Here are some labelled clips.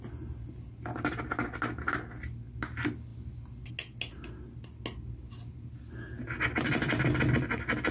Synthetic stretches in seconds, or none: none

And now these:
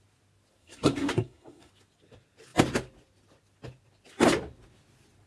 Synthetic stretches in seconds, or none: 0.6-1.7 (codec, SNAC)

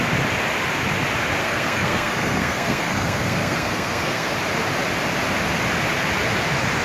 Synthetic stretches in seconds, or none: 1.4-4.3 (codec, SNAC)